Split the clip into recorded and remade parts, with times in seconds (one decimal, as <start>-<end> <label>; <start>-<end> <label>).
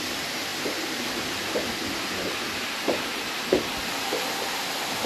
0.0-5.1 recorded